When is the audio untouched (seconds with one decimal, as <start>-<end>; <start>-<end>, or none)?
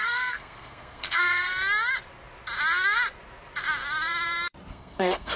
1.5-4.7